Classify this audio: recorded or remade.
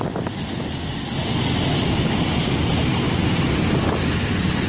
recorded